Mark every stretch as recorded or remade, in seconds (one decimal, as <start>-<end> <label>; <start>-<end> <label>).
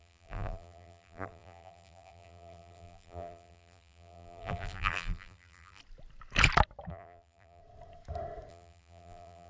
0.0-5.8 remade; 5.8-6.9 recorded; 6.9-7.6 remade; 7.6-8.5 recorded; 8.5-9.5 remade